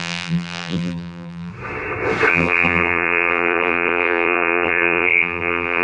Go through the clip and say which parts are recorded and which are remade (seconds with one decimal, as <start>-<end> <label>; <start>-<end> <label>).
0.0-1.5 remade; 1.5-2.3 recorded; 2.3-5.8 remade